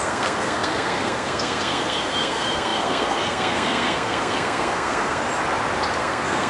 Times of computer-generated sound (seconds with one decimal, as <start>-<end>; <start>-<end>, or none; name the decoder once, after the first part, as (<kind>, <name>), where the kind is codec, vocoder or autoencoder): 0.0-5.2 (codec, SNAC); 6.0-6.5